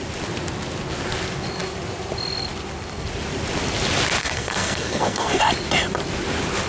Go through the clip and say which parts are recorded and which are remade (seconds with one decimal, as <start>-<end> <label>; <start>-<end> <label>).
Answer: 0.0-4.2 recorded; 4.2-5.4 remade; 5.4-6.7 recorded